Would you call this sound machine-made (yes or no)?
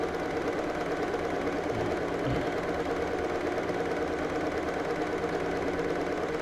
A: no